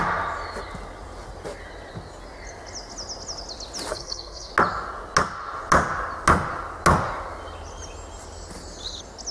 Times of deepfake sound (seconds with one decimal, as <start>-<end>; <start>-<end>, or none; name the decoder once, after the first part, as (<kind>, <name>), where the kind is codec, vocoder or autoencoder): 3.9-4.5 (codec, SNAC)